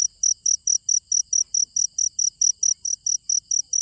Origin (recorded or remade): recorded